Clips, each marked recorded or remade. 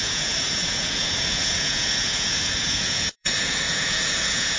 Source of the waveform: remade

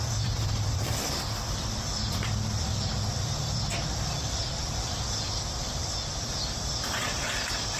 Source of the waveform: remade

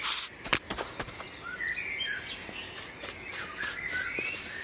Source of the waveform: recorded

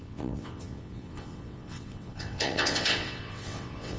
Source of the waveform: remade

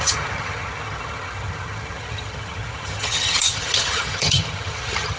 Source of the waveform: remade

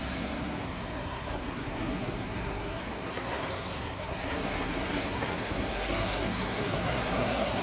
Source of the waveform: remade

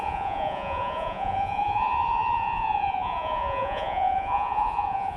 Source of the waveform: remade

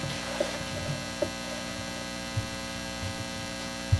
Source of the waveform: recorded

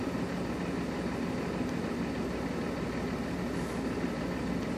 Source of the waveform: recorded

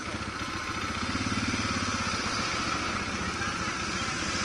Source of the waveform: recorded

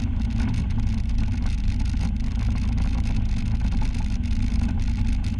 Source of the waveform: recorded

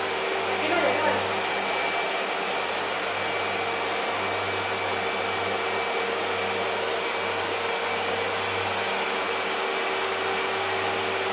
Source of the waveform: recorded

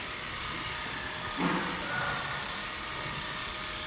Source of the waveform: recorded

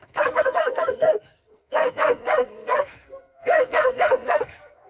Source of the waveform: remade